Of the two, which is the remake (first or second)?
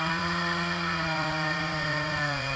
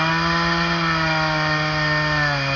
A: first